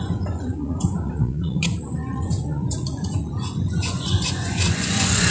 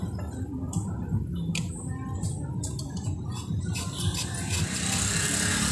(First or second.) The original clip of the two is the second